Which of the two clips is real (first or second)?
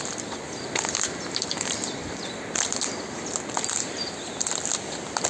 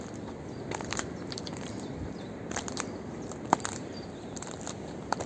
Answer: first